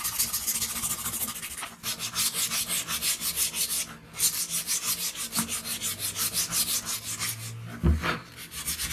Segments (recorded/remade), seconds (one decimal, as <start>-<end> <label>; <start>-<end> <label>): 0.0-8.9 recorded